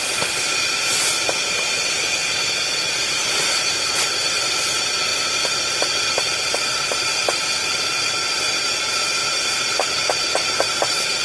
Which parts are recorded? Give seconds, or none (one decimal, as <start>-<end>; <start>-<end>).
0.0-5.1; 7.0-11.2